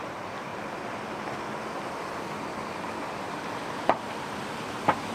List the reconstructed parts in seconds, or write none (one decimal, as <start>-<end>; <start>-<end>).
0.0-0.5; 3.6-5.1